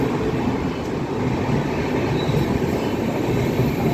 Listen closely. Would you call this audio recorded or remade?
recorded